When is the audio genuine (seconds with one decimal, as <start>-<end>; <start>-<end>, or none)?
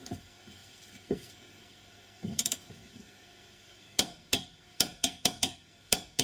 none